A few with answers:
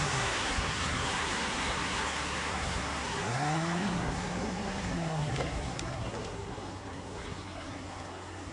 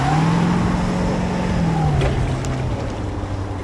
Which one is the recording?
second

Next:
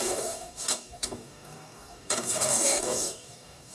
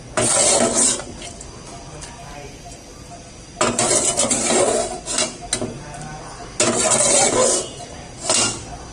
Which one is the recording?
second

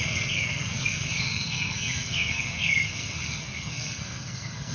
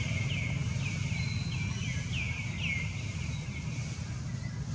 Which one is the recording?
second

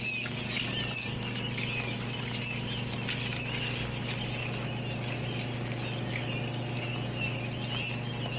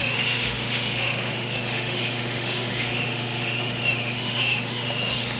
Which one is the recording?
first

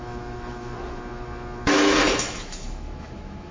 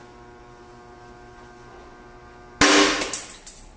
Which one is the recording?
second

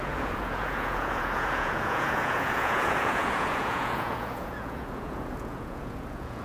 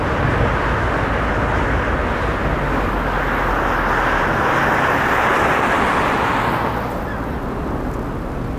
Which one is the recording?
second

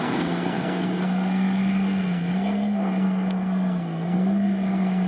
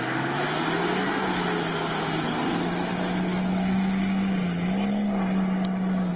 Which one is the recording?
second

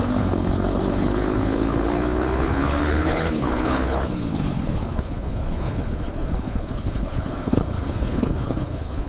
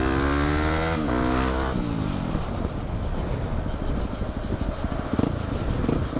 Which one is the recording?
second